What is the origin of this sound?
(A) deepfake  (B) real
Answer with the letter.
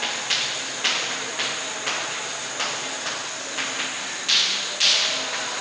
B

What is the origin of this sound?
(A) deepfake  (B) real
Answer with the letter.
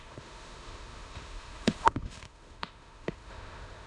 A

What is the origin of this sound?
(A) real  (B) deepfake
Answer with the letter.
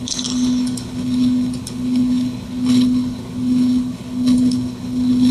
B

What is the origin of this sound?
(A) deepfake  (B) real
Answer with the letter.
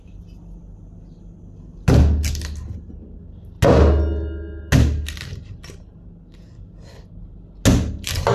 B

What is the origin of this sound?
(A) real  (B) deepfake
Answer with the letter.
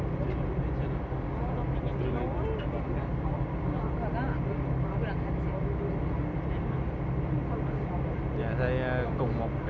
A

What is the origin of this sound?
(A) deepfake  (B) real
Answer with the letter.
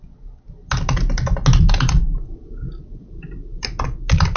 B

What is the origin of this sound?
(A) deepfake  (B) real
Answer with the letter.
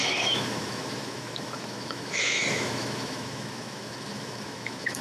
A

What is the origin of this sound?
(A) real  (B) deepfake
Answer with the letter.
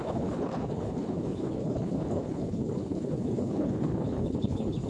B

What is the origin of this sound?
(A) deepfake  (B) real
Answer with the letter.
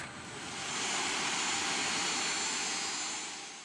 B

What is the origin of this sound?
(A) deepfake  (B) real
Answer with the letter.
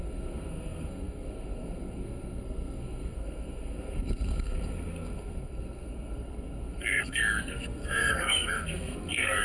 A